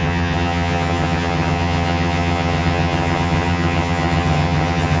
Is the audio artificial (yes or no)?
yes